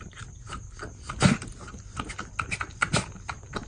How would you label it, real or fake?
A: real